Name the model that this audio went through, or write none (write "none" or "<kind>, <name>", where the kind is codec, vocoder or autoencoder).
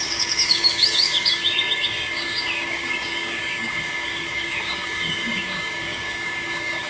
codec, DAC